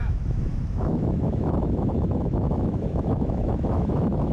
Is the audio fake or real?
fake